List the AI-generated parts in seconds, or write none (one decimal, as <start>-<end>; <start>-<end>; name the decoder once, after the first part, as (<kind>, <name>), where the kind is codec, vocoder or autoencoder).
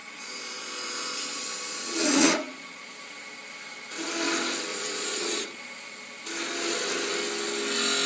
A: 0.0-2.9 (vocoder, Vocos); 4.7-5.6